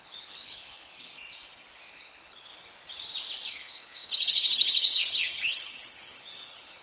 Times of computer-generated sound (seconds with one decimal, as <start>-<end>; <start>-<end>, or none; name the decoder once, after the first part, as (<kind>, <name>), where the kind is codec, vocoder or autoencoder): 0.0-1.1 (codec, HILCodec); 1.9-2.5; 3.5-6.8